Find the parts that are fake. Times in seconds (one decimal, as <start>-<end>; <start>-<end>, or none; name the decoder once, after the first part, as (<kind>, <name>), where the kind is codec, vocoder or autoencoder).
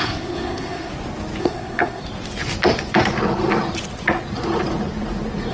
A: 0.0-0.9 (codec, SNAC); 1.4-2.0